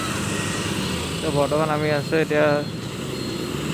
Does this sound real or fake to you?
real